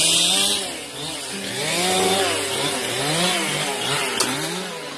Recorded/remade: recorded